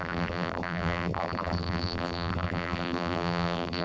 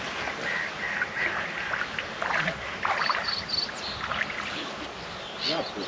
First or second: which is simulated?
first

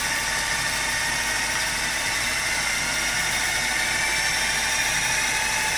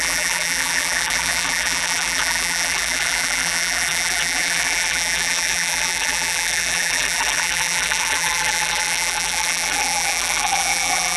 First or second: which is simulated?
second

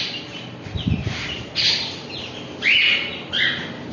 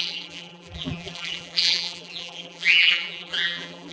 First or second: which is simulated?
second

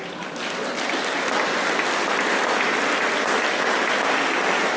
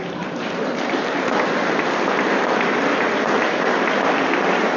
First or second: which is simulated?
second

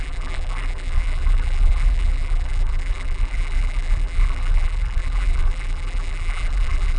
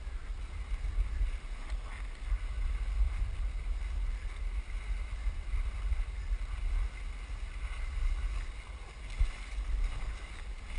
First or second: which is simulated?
first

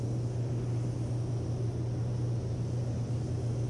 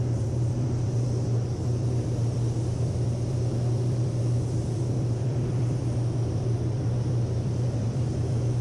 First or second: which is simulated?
second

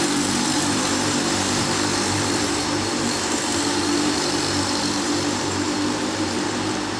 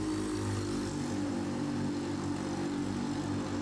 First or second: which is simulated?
first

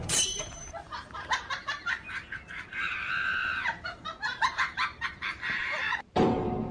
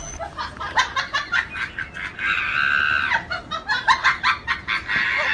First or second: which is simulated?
first